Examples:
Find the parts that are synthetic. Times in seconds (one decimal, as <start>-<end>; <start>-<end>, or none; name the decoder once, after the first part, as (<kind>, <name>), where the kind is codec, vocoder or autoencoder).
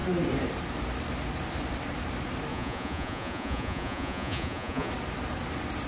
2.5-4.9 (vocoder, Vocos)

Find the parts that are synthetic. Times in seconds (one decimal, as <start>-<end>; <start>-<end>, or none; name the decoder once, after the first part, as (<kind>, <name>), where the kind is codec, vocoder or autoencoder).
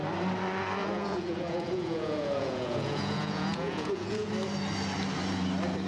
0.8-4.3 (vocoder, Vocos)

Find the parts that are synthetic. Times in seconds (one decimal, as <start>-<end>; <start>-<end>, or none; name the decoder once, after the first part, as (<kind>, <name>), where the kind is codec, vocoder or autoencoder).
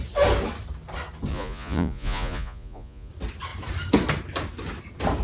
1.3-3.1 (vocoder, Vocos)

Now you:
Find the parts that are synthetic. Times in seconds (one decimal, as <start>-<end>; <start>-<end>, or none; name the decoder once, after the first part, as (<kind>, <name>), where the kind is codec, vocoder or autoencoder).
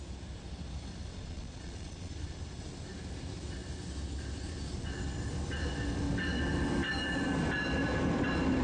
1.1-2.1 (vocoder, Vocos)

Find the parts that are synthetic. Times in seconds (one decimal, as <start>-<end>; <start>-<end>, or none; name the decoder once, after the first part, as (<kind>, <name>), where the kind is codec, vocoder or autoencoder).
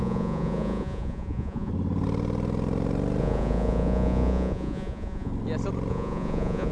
0.0-1.7 (vocoder, Vocos); 3.2-5.3; 5.9-6.7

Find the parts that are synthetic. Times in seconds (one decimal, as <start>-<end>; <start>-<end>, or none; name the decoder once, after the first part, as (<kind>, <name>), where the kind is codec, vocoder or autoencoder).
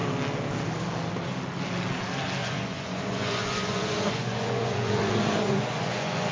2.4-6.3 (vocoder, Vocos)